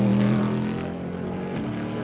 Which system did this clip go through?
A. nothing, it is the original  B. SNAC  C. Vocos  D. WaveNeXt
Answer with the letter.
A